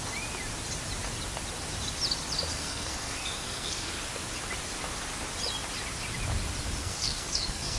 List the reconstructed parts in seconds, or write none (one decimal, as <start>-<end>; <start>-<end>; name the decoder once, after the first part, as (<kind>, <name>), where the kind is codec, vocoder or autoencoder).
2.5-3.9 (codec, SNAC); 6.8-7.8